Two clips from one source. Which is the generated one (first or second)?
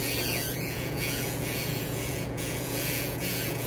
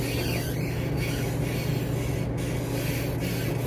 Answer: first